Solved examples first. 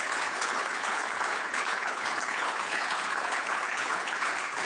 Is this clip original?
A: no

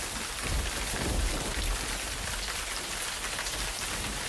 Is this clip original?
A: yes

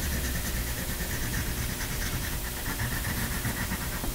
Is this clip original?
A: no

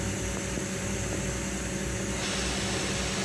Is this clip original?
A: yes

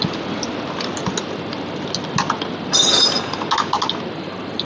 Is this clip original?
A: yes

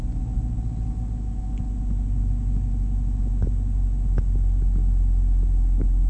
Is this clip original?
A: yes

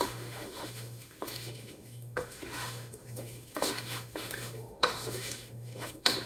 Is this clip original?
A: no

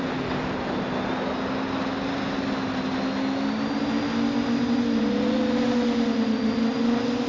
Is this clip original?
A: yes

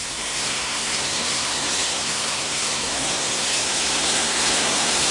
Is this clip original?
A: no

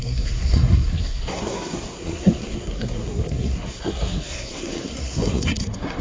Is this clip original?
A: no